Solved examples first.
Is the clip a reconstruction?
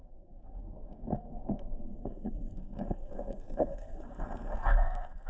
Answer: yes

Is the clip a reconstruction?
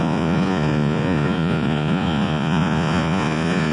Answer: yes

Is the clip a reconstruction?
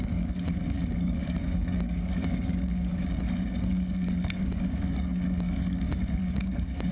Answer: yes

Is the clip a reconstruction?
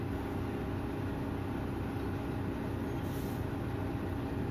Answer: no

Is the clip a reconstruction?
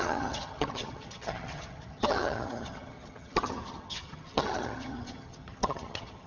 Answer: yes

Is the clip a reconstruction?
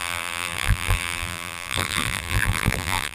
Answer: yes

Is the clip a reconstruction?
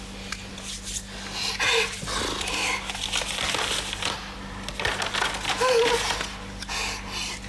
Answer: no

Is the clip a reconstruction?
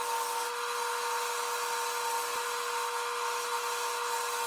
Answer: no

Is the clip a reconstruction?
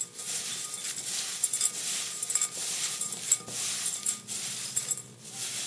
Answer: yes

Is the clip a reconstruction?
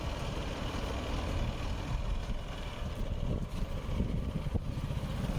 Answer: no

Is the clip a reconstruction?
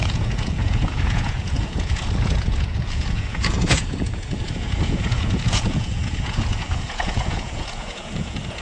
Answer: yes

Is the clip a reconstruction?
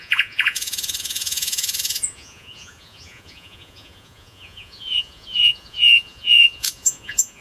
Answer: yes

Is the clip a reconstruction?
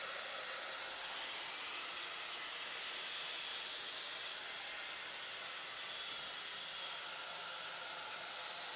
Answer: no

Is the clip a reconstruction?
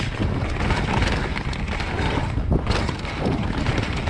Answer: no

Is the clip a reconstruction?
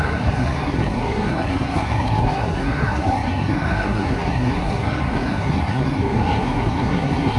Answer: yes